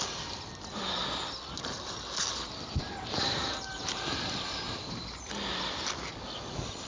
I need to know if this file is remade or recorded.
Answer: recorded